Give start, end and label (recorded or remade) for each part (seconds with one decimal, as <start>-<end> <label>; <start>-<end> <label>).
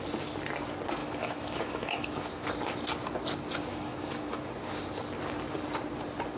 0.0-1.0 recorded; 1.0-2.5 remade; 2.5-3.7 recorded; 3.7-4.5 remade; 4.5-6.4 recorded